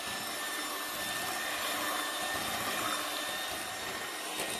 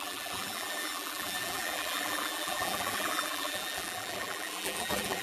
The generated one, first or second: second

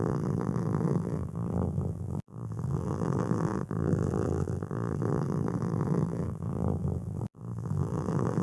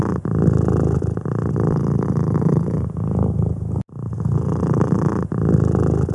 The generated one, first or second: first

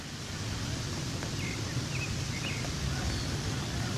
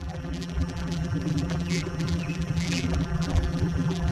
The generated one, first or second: second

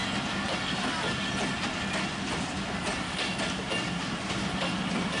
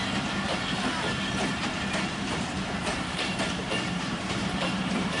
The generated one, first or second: second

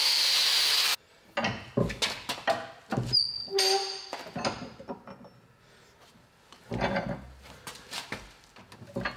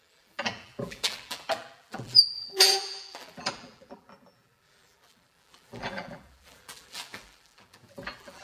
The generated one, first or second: second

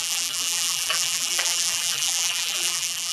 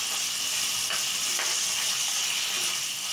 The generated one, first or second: first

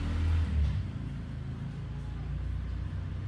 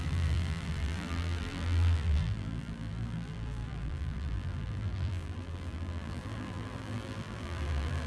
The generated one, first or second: second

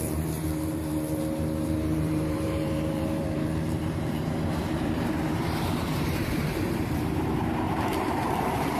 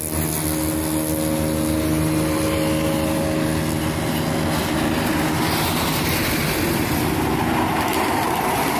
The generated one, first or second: first